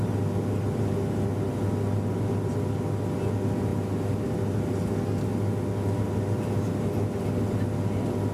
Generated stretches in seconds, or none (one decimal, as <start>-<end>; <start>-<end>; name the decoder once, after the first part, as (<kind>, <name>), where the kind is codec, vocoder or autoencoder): none